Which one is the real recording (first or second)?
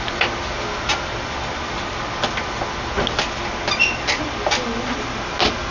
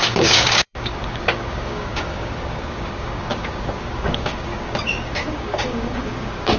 first